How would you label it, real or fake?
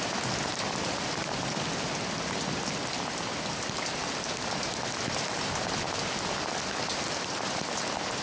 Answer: real